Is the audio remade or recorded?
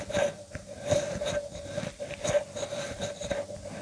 recorded